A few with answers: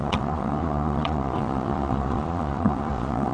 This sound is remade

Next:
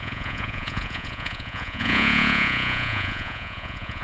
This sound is remade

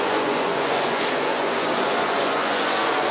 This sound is remade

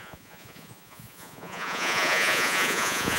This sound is remade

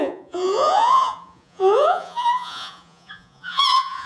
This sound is remade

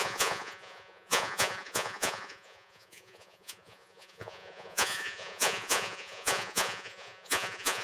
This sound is remade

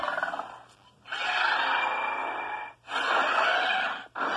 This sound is recorded